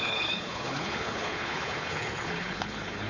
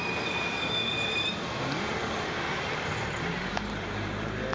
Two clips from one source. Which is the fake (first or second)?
first